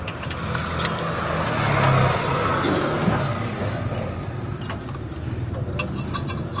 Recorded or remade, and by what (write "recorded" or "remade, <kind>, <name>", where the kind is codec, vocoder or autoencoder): recorded